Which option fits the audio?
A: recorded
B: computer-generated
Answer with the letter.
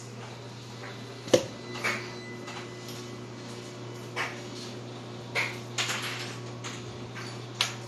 A